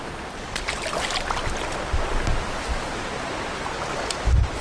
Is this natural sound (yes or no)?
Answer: yes